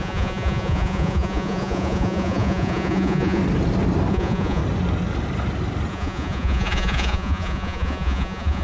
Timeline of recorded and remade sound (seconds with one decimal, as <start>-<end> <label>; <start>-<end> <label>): 0.0-3.4 remade; 3.4-4.1 recorded; 4.1-4.6 remade; 4.6-5.9 recorded; 5.9-8.6 remade